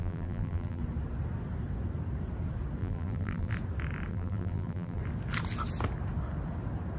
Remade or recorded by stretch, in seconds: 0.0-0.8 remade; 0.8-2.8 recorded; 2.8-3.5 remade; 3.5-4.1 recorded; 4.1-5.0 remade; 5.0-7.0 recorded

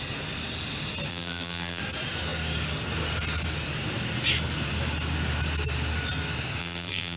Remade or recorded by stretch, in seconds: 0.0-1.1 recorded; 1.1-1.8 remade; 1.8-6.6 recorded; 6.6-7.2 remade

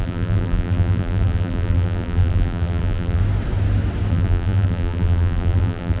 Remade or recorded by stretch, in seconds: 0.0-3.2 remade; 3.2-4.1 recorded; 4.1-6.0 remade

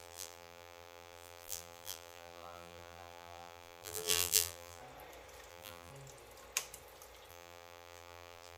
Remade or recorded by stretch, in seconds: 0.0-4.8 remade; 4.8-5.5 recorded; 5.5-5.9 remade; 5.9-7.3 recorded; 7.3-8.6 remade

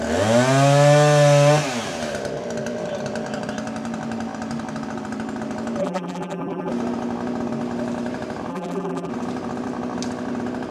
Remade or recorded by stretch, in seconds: 0.0-5.8 recorded; 5.8-6.7 remade; 6.7-8.5 recorded; 8.5-9.1 remade; 9.1-10.7 recorded

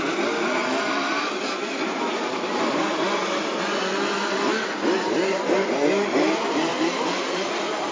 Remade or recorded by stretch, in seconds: 0.0-0.6 recorded; 0.6-2.8 remade; 2.8-6.7 recorded; 6.7-7.9 remade